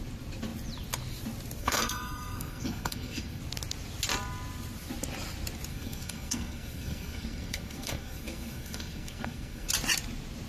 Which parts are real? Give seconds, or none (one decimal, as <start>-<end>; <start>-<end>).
0.0-1.6; 3.4-5.7; 9.7-10.5